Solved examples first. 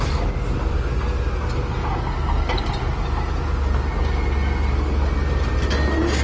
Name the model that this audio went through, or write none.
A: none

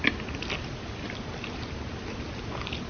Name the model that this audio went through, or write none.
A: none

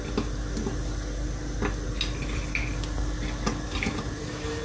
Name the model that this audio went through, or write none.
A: none